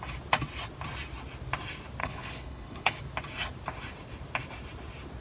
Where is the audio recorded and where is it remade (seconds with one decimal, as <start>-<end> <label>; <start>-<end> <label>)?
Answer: 0.0-2.0 recorded; 2.0-3.0 remade; 3.0-5.2 recorded